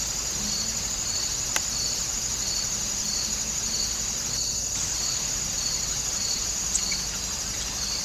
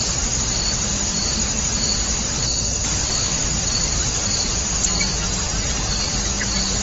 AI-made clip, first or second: second